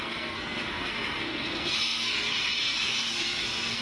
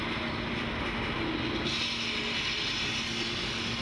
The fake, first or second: first